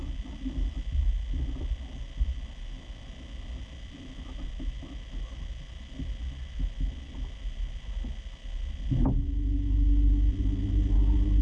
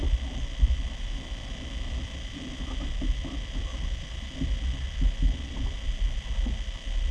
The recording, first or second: first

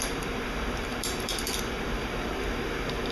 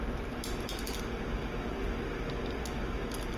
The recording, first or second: second